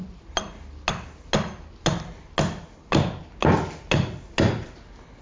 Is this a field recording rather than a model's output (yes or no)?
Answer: yes